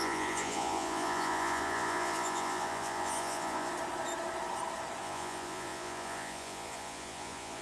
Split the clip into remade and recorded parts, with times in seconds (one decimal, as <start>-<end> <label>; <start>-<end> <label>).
0.0-3.7 remade; 3.7-5.0 recorded; 5.0-7.6 remade